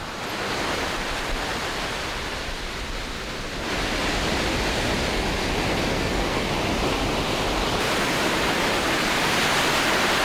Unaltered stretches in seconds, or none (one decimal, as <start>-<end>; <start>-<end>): 0.0-5.7; 6.5-10.2